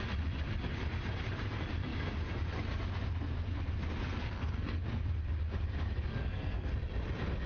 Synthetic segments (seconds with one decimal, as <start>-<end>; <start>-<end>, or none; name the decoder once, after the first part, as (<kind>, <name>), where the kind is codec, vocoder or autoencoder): 4.2-4.8 (codec, SNAC); 6.1-6.7